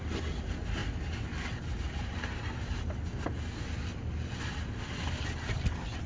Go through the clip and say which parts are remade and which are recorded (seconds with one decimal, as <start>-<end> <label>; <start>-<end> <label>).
0.0-6.1 recorded